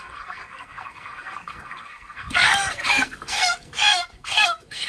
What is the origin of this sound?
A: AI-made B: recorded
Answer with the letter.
A